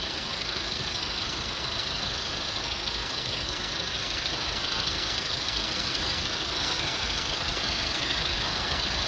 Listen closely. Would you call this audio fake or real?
fake